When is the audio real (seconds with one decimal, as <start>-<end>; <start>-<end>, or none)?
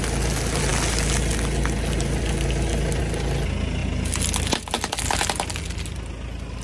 0.0-6.6